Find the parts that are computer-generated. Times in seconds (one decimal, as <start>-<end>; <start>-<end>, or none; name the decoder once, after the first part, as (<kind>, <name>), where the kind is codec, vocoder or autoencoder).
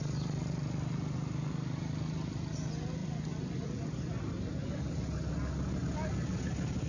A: none